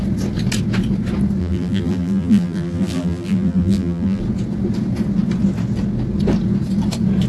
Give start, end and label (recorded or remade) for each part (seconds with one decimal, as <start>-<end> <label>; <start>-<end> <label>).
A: 0.0-1.4 recorded; 1.4-4.2 remade; 4.2-7.3 recorded